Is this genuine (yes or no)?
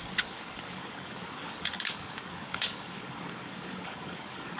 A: no